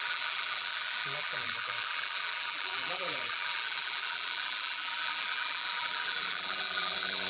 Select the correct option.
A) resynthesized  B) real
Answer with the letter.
A